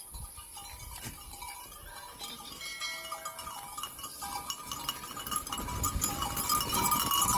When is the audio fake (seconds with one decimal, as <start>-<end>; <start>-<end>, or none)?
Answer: none